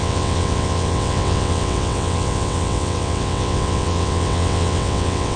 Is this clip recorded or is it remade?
remade